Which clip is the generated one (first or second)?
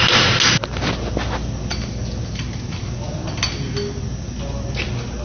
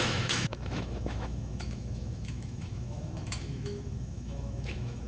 second